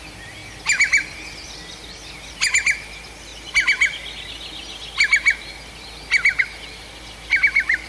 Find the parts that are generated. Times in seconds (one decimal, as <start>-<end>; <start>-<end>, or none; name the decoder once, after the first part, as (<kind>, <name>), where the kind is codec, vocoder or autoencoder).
0.0-0.4 (vocoder, BigVGAN v2); 1.7-3.3; 6.4-7.9